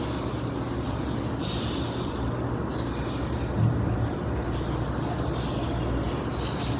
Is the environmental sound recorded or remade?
recorded